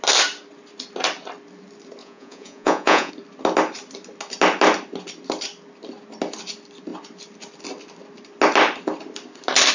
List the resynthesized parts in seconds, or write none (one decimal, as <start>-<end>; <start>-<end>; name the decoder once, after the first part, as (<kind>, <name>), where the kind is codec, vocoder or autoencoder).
2.0-3.1 (vocoder, Vocos)